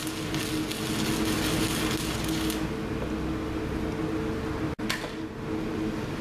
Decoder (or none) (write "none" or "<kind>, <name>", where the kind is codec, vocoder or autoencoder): none